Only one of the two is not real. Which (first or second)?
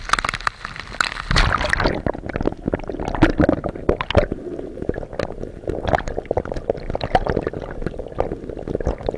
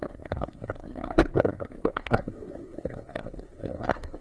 second